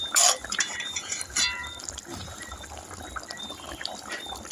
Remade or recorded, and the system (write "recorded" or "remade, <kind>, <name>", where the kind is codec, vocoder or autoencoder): recorded